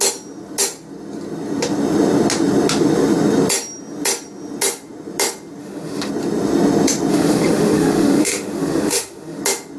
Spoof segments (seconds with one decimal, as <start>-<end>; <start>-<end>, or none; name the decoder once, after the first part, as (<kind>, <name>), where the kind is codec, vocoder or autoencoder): 5.6-6.1 (autoencoder, DAC-VAE); 7.1-9.4